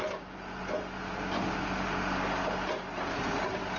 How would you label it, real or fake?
real